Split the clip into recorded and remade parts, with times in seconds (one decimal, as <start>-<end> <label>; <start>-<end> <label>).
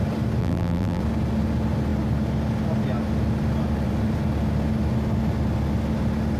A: 0.0-0.4 recorded; 0.4-1.0 remade; 1.0-6.4 recorded